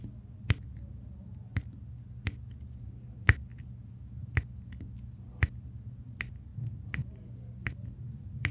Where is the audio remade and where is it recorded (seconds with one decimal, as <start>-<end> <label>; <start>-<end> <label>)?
0.0-8.5 recorded